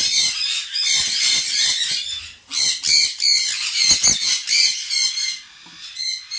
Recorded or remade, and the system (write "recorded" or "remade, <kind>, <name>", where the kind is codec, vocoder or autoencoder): recorded